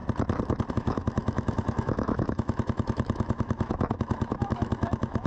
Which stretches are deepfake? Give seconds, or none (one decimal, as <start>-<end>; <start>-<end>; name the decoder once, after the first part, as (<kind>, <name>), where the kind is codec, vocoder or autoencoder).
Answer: 0.7-5.3 (autoencoder, DAC-VAE)